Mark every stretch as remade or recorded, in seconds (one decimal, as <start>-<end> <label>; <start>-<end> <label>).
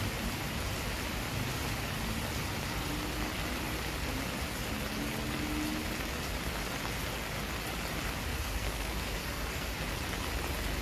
0.0-8.3 recorded; 8.3-9.7 remade; 9.7-10.8 recorded